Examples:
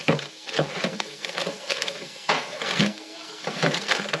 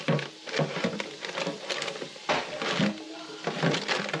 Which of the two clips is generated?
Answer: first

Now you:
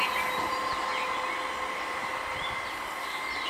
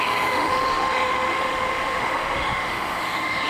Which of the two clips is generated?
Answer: second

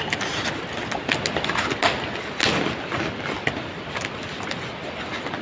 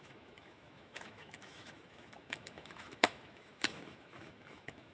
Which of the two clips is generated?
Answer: second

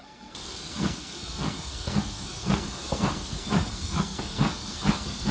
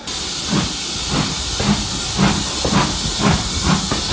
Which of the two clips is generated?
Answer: first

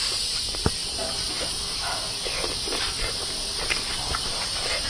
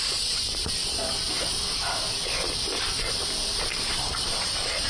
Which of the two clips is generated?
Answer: second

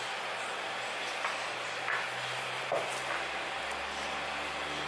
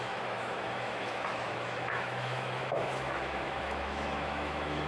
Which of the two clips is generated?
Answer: second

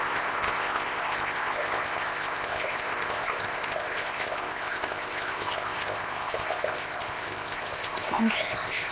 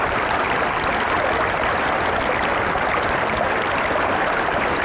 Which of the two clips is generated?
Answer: first